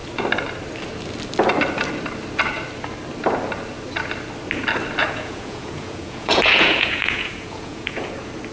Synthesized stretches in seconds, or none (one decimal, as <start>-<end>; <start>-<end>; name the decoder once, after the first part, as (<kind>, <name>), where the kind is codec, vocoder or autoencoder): 5.0-8.1 (vocoder, Vocos)